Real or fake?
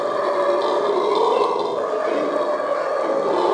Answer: real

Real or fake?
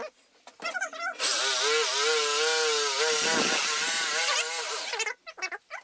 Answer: real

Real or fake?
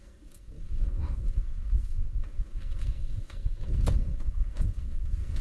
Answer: fake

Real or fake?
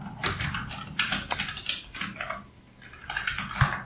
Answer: real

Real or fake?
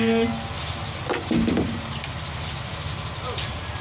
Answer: real